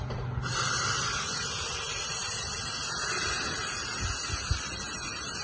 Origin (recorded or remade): recorded